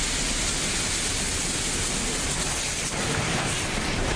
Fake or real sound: real